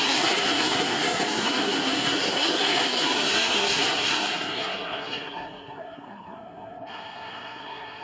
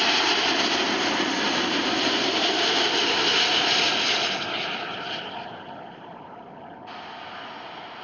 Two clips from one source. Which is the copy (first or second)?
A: first